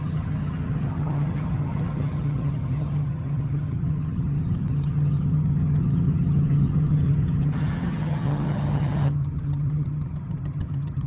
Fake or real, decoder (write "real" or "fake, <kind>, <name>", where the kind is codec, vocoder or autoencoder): fake, vocoder, HiFi-GAN